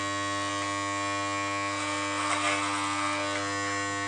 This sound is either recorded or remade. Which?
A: recorded